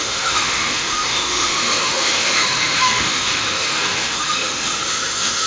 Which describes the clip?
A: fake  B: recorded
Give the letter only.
A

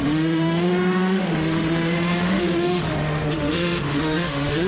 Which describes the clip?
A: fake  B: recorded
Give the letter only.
A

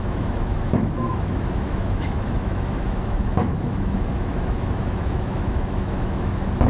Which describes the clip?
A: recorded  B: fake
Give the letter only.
B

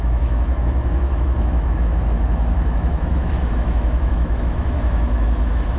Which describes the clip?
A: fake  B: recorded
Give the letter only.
A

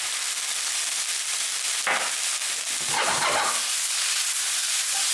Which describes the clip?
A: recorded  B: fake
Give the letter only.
A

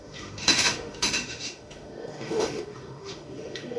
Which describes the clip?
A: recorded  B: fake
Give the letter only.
B